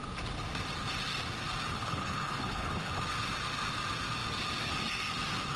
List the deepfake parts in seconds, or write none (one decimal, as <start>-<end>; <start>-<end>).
1.7-3.0